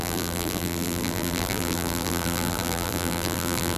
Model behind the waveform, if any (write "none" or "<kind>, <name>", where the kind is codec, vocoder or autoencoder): vocoder, BigVGAN v2